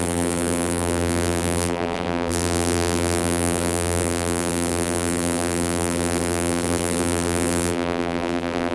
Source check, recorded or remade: remade